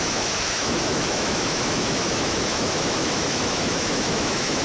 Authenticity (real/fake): fake